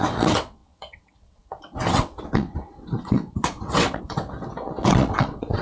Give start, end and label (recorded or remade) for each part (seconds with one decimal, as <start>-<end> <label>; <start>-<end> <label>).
0.0-5.6 remade